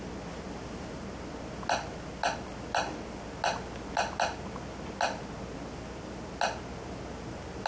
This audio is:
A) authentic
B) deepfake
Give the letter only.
A